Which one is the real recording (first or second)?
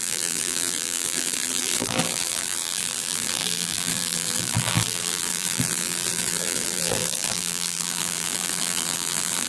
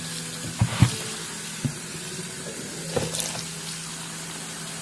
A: second